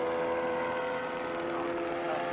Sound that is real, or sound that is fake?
real